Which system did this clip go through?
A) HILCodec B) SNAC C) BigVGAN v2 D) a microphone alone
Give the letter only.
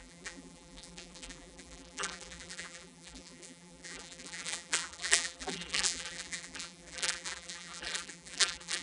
C